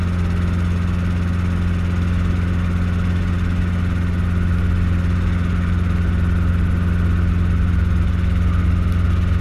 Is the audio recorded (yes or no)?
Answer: yes